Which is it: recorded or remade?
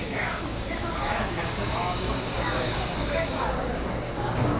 remade